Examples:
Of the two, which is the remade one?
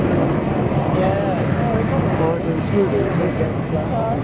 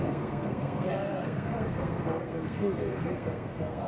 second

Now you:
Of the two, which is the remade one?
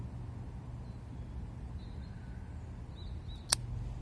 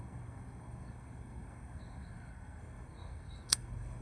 second